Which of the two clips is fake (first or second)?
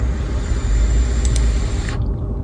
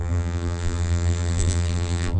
second